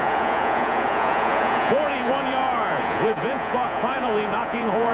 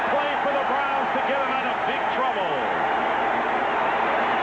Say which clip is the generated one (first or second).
first